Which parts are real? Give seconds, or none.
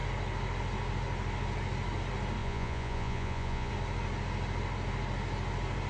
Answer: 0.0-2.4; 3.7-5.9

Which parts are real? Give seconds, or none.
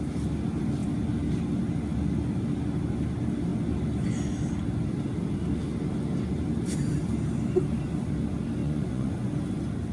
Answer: 0.0-8.6; 9.3-9.9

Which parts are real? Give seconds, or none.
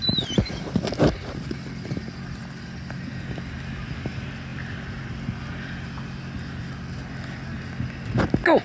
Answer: 0.0-8.6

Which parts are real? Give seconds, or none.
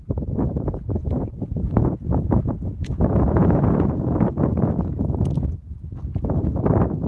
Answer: 0.0-1.0; 4.0-7.1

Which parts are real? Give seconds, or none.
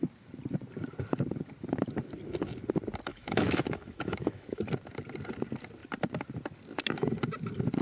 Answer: 0.0-3.1; 4.6-7.8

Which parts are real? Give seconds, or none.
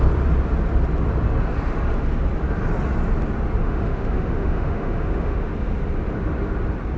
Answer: 0.0-3.6; 5.5-7.0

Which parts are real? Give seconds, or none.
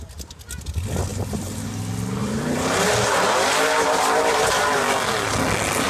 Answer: 0.0-1.1; 1.7-2.2; 4.6-5.9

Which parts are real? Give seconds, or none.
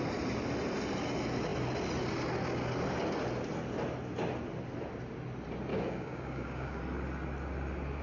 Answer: 0.0-5.7; 6.8-8.0